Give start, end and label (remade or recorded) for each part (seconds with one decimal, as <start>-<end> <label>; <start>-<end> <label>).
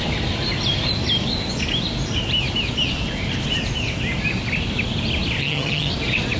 0.0-5.4 recorded; 5.4-5.9 remade; 5.9-6.4 recorded